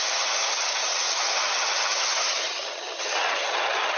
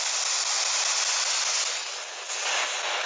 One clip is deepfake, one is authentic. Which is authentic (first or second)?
second